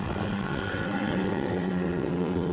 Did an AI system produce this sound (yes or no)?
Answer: yes